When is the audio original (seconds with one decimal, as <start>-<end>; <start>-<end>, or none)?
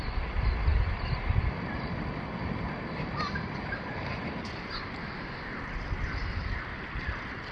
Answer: 0.0-7.5